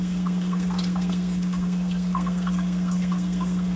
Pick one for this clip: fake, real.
fake